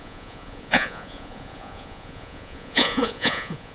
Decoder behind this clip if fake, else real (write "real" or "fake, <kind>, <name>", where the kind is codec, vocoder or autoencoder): fake, vocoder, Vocos